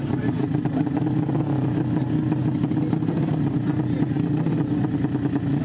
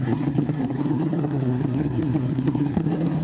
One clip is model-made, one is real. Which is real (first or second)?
first